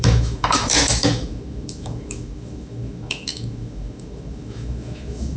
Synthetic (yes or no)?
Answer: yes